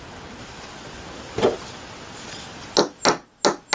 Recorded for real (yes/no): yes